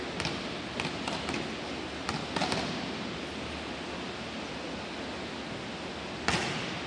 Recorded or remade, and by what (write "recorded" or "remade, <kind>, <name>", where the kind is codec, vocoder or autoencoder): recorded